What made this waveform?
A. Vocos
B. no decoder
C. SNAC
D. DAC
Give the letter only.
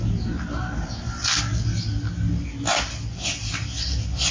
B